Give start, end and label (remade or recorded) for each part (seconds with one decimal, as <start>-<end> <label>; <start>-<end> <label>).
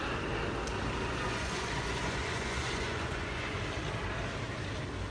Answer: 0.0-1.1 recorded; 1.1-3.6 remade; 3.6-5.1 recorded